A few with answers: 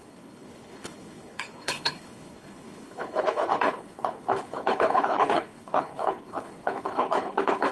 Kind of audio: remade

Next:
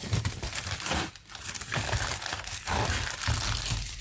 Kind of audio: remade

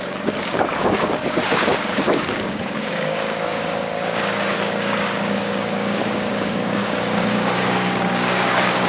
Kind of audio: remade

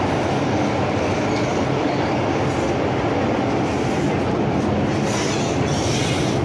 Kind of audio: recorded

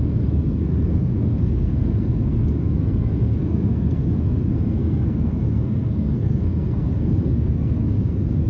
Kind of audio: remade